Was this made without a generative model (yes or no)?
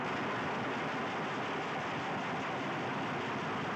yes